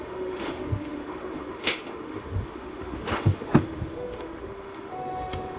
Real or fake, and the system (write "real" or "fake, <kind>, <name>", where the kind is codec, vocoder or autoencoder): fake, autoencoder, DAC-VAE